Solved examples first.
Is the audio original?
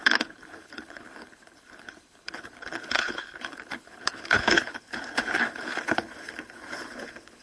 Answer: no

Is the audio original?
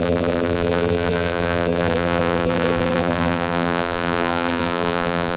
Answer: no